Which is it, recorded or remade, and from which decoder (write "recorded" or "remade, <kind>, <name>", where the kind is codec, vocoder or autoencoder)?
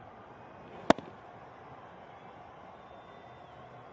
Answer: recorded